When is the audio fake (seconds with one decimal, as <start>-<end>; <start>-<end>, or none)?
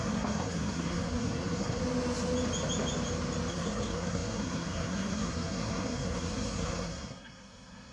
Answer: 0.0-1.8; 3.5-7.9